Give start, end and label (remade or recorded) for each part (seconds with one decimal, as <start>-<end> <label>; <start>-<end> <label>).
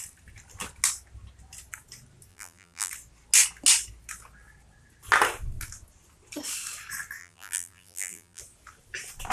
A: 0.0-2.3 recorded; 2.3-2.9 remade; 2.9-7.2 recorded; 7.2-8.4 remade; 8.4-9.3 recorded